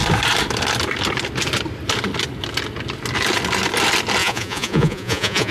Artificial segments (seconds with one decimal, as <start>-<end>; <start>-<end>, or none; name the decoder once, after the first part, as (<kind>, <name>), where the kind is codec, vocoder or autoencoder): 4.2-5.5 (vocoder, Vocos)